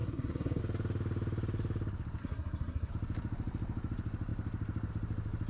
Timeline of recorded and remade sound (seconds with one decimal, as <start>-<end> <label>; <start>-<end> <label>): 0.0-0.6 remade; 0.6-2.2 recorded; 2.2-2.9 remade; 2.9-5.5 recorded